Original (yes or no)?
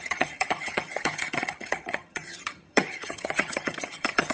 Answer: no